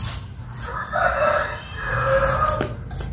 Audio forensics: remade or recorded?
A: recorded